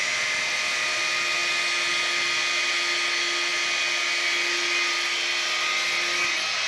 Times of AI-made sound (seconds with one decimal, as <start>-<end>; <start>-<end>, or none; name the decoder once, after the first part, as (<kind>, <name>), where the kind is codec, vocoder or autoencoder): none

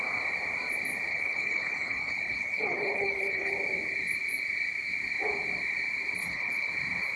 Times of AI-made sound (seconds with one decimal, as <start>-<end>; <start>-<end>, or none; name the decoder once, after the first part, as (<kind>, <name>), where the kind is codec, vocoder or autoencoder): 1.1-3.5 (codec, HILCodec); 6.2-6.7

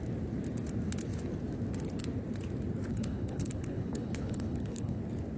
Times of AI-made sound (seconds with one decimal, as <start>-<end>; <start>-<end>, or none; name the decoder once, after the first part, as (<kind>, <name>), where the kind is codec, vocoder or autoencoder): 2.9-5.0 (codec, HILCodec)

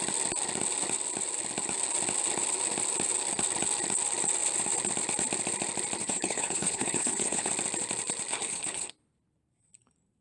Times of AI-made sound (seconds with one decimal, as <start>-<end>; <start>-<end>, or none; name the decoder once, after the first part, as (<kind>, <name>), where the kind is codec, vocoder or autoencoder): 6.0-7.5 (codec, HILCodec); 8.3-8.9

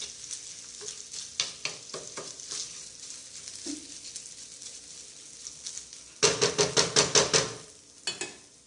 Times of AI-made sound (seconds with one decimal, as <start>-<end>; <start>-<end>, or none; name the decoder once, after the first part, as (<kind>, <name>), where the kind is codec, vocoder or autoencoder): none